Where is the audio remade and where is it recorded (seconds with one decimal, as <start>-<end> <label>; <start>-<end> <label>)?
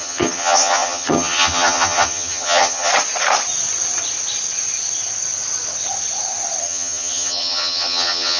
0.0-2.9 remade; 2.9-6.6 recorded; 6.6-8.4 remade